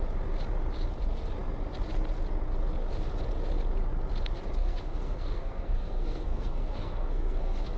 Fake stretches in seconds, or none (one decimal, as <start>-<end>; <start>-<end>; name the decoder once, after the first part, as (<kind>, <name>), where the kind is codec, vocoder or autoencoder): 4.6-7.8 (codec, SNAC)